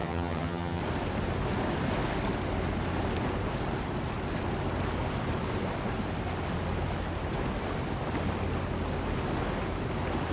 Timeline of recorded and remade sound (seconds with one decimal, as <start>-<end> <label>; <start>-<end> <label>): 0.0-0.8 remade; 0.8-10.3 recorded